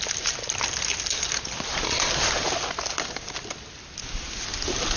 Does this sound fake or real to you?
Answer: real